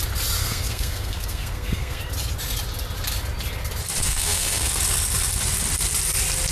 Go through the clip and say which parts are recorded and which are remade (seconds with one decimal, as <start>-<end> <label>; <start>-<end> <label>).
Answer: 0.0-0.4 recorded; 0.4-2.0 remade; 2.0-4.0 recorded; 4.0-4.8 remade; 4.8-6.5 recorded